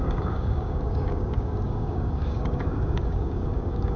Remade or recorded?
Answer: remade